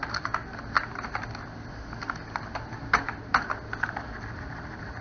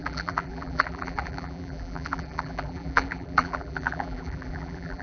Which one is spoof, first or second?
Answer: second